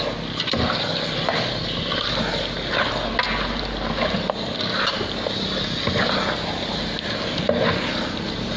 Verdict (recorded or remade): recorded